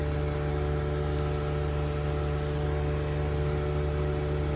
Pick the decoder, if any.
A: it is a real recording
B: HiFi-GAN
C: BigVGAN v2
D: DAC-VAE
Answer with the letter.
A